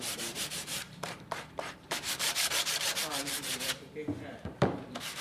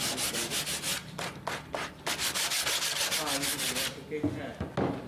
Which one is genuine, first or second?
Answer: second